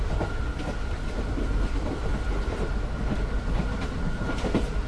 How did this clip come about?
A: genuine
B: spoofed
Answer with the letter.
A